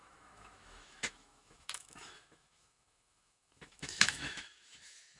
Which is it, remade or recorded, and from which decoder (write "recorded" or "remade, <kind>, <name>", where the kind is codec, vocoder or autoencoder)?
remade, autoencoder, DAC-VAE